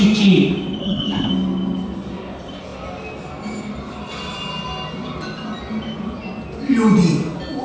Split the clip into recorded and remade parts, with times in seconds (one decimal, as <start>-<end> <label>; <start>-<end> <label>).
0.0-0.8 recorded; 0.8-1.3 remade; 1.3-7.6 recorded